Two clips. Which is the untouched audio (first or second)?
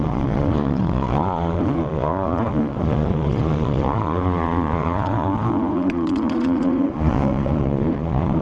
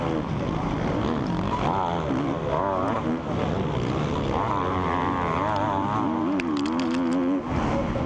second